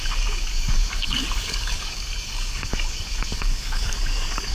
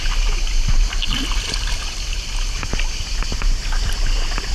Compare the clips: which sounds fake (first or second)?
first